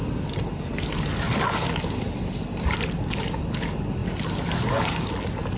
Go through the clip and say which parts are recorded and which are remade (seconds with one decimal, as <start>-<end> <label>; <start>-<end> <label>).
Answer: 0.0-5.6 recorded